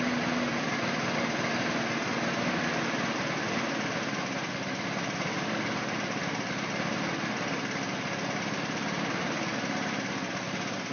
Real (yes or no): yes